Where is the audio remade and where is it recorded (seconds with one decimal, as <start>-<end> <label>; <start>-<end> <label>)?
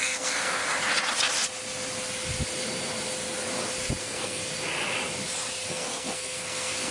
0.0-0.6 remade; 0.6-4.0 recorded; 4.0-4.4 remade; 4.4-5.7 recorded; 5.7-6.9 remade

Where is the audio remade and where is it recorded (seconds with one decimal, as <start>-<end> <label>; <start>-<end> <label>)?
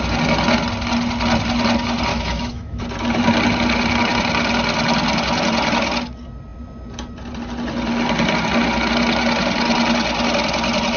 0.0-2.1 recorded; 2.1-2.8 remade; 2.8-11.0 recorded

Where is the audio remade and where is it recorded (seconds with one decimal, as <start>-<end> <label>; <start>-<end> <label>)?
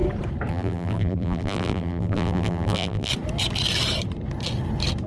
0.0-0.5 recorded; 0.5-3.1 remade; 3.1-5.1 recorded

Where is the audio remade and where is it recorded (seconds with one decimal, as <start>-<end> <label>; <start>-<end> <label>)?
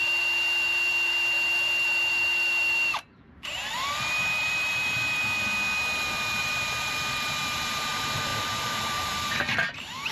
0.0-5.2 remade; 5.2-6.4 recorded; 6.4-10.1 remade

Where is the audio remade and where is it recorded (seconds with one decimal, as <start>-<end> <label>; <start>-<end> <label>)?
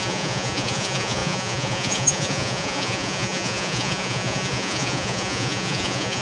0.0-6.2 remade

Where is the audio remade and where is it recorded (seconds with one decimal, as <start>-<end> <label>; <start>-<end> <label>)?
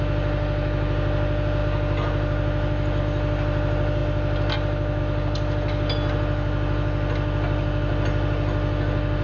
0.0-9.2 recorded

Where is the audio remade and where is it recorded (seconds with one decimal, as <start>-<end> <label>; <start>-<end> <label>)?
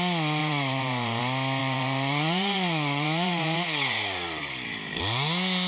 0.0-0.4 recorded; 0.4-1.2 remade; 1.2-1.6 recorded; 1.6-5.0 remade; 5.0-5.7 recorded